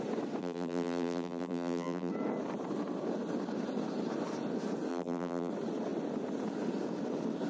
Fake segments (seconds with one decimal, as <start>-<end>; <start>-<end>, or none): 0.4-2.1; 4.9-5.5